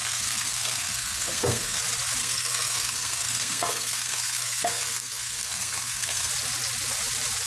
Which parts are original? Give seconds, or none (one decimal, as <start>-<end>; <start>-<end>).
1.8-2.2; 6.3-7.5